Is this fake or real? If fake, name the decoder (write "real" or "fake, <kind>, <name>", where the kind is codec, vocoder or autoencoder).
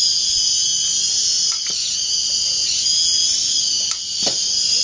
real